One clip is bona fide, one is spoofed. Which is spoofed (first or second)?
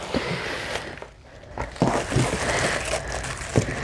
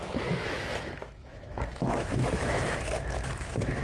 second